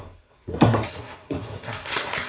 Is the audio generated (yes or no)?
yes